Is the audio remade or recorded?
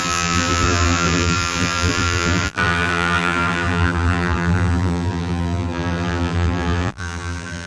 remade